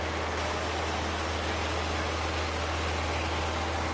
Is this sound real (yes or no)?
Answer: yes